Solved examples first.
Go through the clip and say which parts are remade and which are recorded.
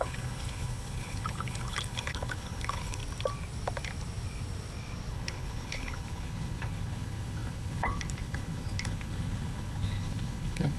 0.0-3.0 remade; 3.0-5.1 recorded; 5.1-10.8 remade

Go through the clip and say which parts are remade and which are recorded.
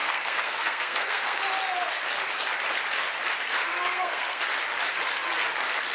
0.0-1.4 remade; 1.4-3.7 recorded; 3.7-4.4 remade; 4.4-5.9 recorded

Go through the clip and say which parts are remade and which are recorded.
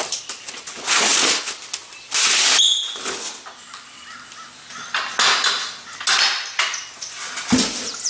0.0-8.1 recorded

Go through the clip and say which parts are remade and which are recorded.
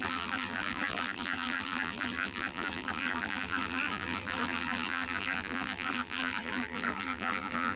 0.0-7.8 remade